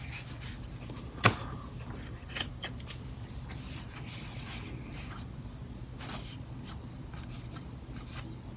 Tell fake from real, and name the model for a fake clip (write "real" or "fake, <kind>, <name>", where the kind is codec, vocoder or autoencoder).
real